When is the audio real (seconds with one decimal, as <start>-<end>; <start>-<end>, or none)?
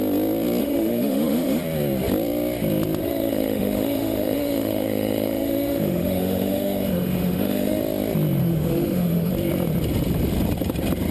0.0-0.6; 1.6-3.0; 7.8-8.4; 9.3-11.1